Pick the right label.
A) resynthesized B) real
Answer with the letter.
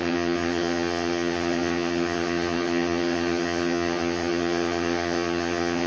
A